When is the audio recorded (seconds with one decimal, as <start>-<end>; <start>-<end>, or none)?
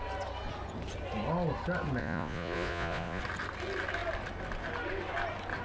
0.0-2.0; 3.2-5.6